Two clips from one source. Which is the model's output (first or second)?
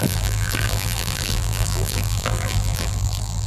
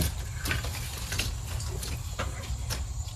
first